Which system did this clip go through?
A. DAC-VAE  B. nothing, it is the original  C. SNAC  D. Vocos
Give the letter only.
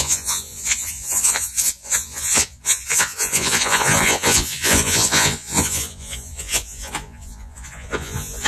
D